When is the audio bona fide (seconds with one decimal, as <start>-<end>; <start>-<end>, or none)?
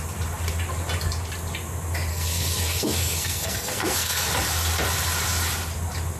0.0-2.1; 4.3-6.2